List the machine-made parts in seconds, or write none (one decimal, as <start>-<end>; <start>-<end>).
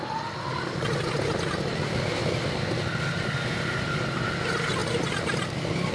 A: none